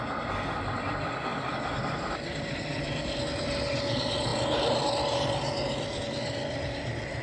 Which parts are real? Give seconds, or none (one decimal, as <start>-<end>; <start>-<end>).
0.0-1.3; 3.2-4.3; 4.9-7.2